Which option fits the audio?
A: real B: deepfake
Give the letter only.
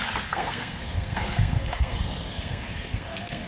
B